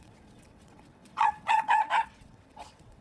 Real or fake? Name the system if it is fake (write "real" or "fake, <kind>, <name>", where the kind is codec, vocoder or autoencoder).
fake, vocoder, WaveNeXt